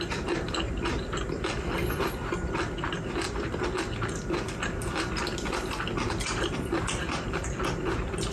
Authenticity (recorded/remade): recorded